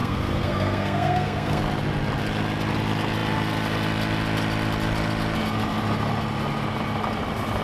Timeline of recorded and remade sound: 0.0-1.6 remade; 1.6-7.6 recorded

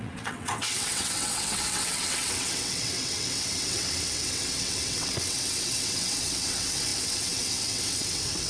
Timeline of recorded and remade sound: 0.0-8.5 remade

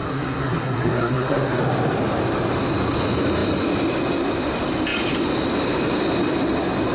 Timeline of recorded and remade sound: 0.0-1.6 remade; 1.6-6.9 recorded